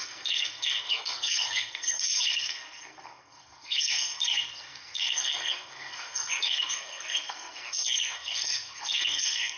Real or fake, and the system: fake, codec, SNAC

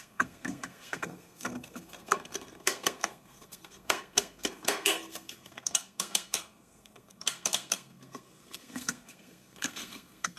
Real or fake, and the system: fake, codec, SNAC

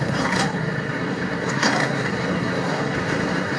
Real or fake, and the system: fake, codec, SNAC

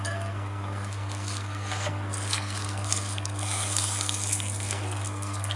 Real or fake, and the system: fake, codec, SNAC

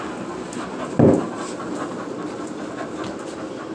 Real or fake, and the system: real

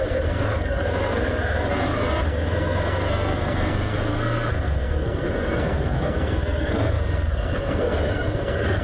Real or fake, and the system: fake, codec, SNAC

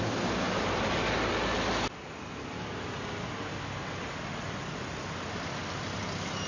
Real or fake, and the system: real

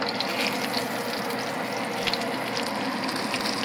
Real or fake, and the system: real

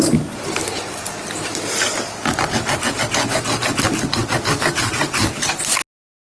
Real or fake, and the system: real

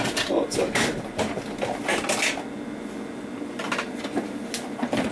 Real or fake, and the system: real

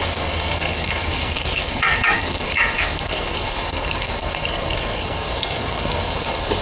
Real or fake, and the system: fake, codec, SNAC